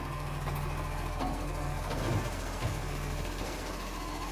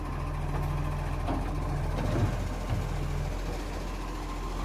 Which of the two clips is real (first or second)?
second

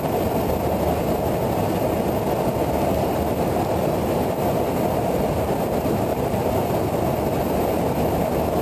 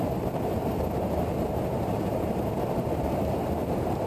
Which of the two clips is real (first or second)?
first